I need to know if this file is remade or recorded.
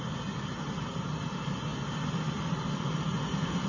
recorded